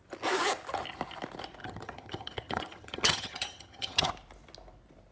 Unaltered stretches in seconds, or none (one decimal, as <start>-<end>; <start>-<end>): 0.0-1.6; 4.1-5.1